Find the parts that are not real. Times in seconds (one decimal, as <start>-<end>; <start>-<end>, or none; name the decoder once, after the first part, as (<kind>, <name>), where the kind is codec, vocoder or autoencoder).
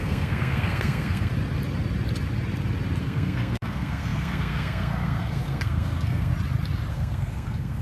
0.0-1.3 (codec, SNAC); 3.0-6.3; 6.9-7.8